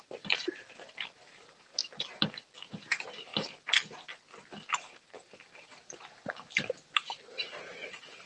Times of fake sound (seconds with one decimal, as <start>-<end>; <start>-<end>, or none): 0.0-1.8; 2.6-3.3; 4.7-8.3